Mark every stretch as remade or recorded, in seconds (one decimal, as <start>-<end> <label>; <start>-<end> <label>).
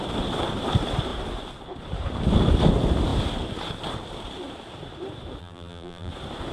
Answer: 0.0-5.4 recorded; 5.4-6.1 remade; 6.1-6.5 recorded